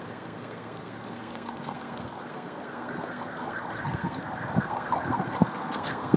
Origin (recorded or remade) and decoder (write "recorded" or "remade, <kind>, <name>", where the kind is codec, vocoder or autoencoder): remade, codec, SNAC